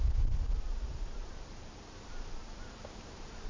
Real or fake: real